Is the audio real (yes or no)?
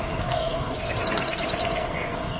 no